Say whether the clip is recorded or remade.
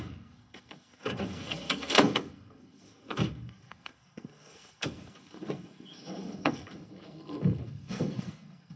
remade